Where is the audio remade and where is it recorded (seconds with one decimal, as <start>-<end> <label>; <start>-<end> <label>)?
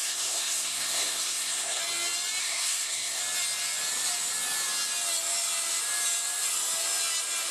0.0-1.8 remade; 1.8-2.4 recorded; 2.4-3.2 remade; 3.2-7.5 recorded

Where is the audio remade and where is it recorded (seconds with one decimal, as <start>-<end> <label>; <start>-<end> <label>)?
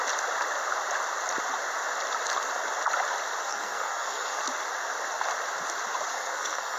0.0-3.4 recorded; 3.4-4.4 remade; 4.4-6.1 recorded; 6.1-6.8 remade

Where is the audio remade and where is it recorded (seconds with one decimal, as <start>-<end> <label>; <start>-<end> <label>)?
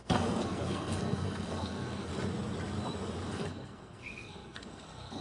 0.0-2.1 remade; 2.1-3.3 recorded; 3.3-5.2 remade